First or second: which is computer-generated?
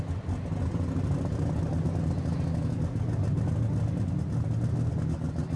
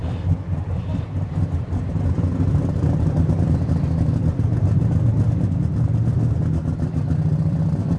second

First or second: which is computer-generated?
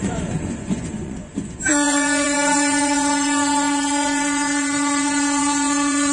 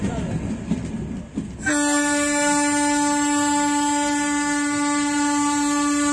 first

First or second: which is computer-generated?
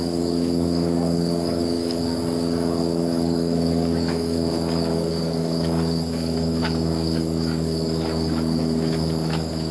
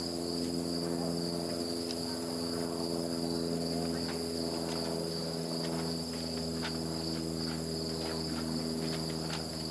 first